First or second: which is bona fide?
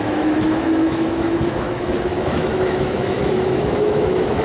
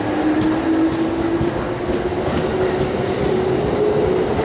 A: second